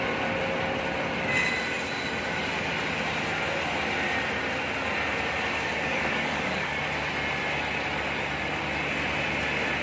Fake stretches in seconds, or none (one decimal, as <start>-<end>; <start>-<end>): 5.7-6.8